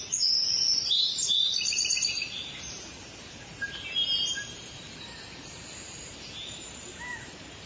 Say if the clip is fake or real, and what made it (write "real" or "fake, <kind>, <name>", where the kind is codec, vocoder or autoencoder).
fake, vocoder, BigVGAN v2